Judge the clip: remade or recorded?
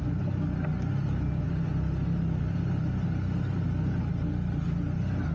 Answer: recorded